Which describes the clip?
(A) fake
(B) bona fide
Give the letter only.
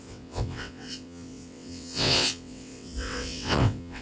A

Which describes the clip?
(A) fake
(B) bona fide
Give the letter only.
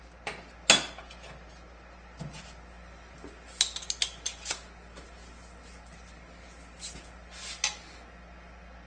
B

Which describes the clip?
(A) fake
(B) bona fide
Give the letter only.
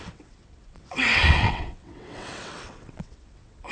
A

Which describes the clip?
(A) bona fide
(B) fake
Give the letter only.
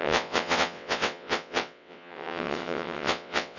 B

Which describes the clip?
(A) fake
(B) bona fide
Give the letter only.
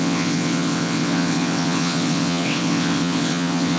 A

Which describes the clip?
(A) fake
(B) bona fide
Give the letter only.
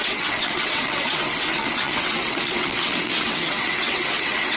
A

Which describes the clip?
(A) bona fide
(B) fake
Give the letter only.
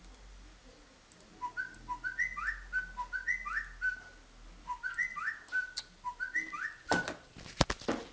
A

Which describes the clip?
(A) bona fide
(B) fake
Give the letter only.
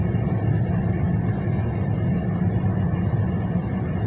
A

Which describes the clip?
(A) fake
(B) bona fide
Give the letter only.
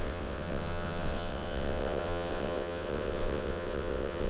A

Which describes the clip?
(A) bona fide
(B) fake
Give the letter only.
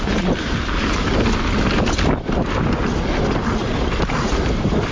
A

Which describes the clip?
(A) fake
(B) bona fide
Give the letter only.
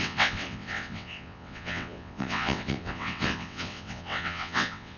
A